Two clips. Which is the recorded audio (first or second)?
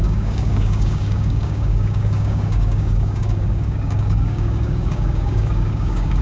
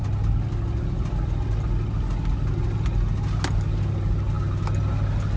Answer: second